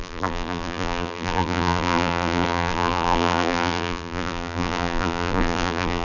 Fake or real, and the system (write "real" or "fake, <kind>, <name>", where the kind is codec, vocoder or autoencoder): fake, vocoder, BigVGAN v2